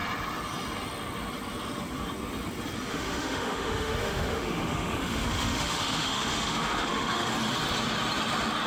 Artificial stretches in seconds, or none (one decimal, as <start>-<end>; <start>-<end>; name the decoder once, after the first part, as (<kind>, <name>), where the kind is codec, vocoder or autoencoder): 2.9-7.3 (autoencoder, DAC-VAE)